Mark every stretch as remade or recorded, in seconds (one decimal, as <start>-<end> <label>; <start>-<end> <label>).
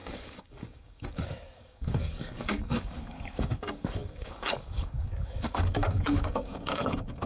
0.0-7.3 remade